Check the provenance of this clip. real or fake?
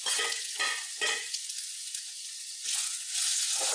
fake